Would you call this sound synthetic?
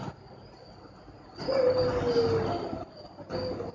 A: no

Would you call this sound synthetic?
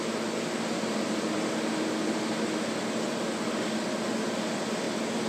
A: no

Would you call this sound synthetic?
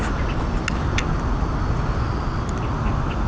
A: no